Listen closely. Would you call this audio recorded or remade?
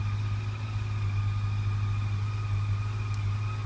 recorded